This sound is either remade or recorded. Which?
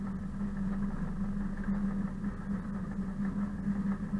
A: recorded